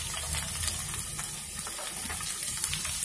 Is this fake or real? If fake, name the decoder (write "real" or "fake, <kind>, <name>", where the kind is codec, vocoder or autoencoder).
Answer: real